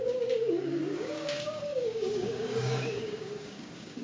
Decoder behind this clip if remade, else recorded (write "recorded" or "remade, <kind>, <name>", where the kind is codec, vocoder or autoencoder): remade, codec, DAC